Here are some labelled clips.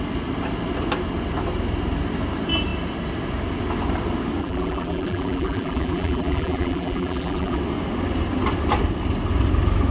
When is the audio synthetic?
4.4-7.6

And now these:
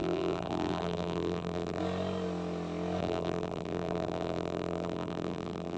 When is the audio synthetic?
0.0-1.8; 3.0-5.8

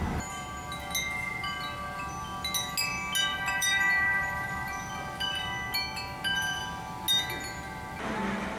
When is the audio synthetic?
3.3-4.9

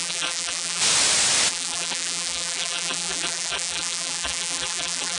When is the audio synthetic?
0.0-0.8; 1.5-5.2

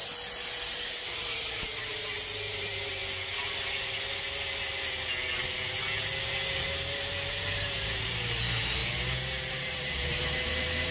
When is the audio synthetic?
0.8-3.0; 7.3-8.8; 9.5-10.9